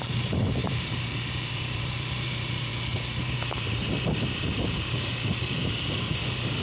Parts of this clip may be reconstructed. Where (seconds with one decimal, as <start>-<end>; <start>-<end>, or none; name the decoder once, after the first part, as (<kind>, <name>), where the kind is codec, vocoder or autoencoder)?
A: 0.0-2.7 (vocoder, BigVGAN v2); 3.2-6.6